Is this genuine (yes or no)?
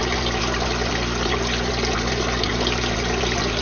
yes